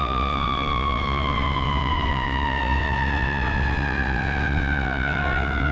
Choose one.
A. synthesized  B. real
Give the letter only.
A